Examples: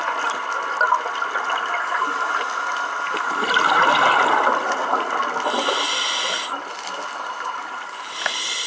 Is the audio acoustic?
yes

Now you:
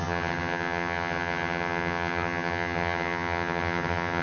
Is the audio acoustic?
no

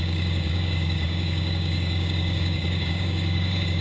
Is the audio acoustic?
no